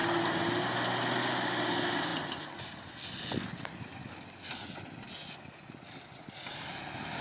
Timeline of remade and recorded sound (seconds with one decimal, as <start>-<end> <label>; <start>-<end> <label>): 0.0-7.2 recorded